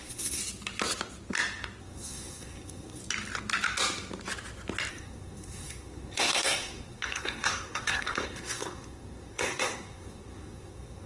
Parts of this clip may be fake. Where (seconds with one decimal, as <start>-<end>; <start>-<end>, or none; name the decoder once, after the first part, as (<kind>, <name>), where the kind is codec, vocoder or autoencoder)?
0.0-0.4 (codec, SNAC); 1.8-3.0; 4.9-11.1